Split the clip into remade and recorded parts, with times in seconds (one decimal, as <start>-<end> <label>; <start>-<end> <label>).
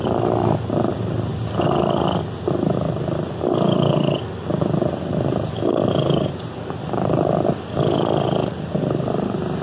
0.0-8.4 recorded; 8.4-8.9 remade; 8.9-9.6 recorded